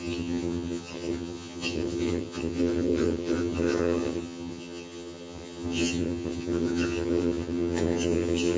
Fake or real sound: fake